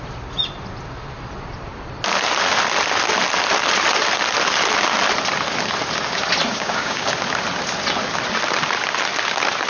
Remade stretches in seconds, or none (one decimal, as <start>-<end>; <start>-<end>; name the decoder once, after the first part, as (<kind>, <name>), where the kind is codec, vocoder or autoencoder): 6.5-7.1 (codec, DAC)